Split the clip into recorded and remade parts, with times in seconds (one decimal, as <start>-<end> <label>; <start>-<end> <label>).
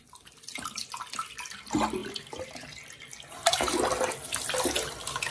0.0-5.3 recorded